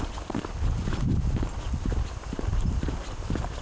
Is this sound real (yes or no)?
yes